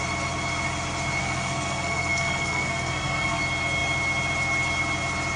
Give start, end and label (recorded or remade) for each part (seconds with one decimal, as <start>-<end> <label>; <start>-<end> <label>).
0.0-1.2 recorded; 1.2-3.4 remade; 3.4-5.4 recorded

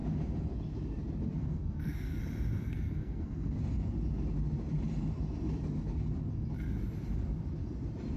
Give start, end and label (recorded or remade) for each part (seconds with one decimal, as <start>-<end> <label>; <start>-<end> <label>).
0.0-1.4 recorded; 1.4-2.2 remade; 2.2-2.7 recorded; 2.7-3.6 remade; 3.6-8.2 recorded

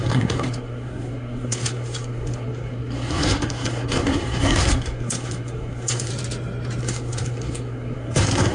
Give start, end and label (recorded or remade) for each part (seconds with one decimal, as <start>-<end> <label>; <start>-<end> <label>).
0.0-6.1 remade; 6.1-6.8 recorded; 6.8-8.5 remade

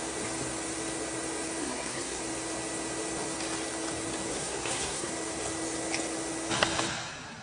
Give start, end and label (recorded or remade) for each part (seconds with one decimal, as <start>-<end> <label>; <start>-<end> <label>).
0.0-1.6 recorded; 1.6-2.2 remade; 2.2-4.3 recorded; 4.3-5.1 remade; 5.1-7.4 recorded

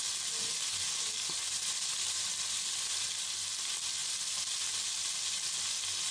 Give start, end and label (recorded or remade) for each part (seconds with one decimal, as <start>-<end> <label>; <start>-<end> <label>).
0.0-6.1 recorded

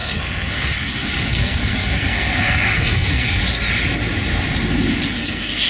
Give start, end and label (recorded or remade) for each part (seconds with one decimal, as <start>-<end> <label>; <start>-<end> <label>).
0.0-3.4 remade; 3.4-5.0 recorded; 5.0-5.7 remade

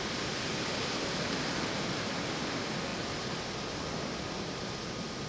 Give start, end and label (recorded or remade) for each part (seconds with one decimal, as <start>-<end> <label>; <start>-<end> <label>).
0.0-5.3 recorded